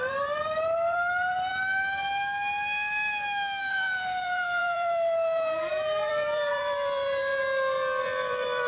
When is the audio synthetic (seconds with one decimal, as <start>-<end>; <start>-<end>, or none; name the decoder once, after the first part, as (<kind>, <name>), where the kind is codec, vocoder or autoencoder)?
0.0-1.5 (vocoder, BigVGAN v2); 3.6-7.3; 8.0-8.7